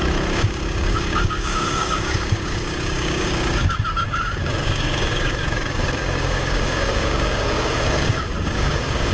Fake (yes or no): yes